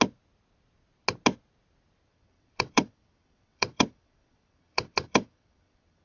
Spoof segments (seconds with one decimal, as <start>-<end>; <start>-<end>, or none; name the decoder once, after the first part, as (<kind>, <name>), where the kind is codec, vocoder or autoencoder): 2.1-6.0 (vocoder, WaveNeXt)